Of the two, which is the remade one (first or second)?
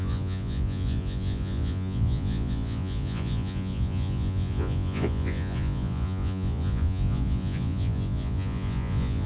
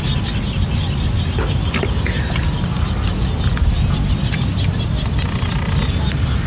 first